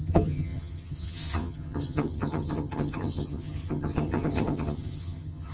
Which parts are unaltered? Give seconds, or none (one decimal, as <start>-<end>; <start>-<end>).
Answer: none